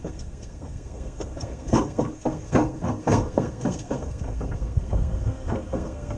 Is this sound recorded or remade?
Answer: remade